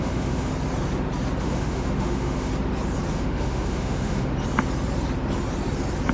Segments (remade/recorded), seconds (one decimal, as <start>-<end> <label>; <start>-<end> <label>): 0.0-0.5 remade; 0.5-1.4 recorded; 1.4-2.5 remade; 2.5-3.1 recorded; 3.1-4.3 remade; 4.3-6.1 recorded